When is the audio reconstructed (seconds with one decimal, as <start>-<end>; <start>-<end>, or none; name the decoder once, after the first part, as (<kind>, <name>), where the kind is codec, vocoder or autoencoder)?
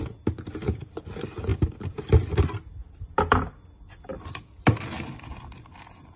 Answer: none